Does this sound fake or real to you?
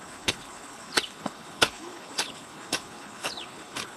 fake